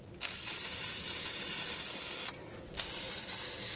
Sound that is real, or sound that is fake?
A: real